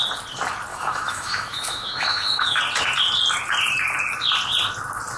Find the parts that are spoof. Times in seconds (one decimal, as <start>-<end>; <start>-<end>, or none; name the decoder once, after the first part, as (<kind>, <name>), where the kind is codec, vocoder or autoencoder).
0.7-2.6 (autoencoder, DAC-VAE)